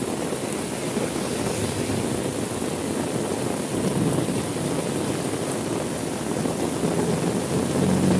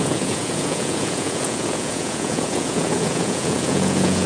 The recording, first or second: first